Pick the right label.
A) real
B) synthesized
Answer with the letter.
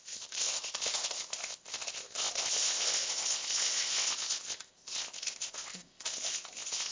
B